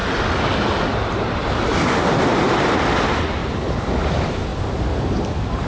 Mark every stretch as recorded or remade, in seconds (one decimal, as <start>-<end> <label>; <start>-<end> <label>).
0.0-1.1 recorded; 1.1-3.4 remade; 3.4-3.9 recorded; 3.9-4.5 remade; 4.5-5.0 recorded; 5.0-5.7 remade